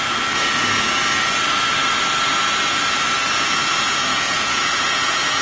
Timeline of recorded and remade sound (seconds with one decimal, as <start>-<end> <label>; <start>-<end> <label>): 0.0-4.1 recorded; 4.1-5.4 remade